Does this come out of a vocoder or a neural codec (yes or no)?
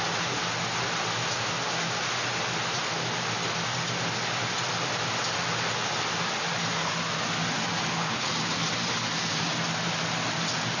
no